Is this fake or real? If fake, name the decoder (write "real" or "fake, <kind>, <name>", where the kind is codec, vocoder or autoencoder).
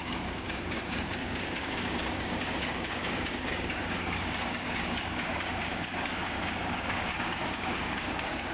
fake, codec, DAC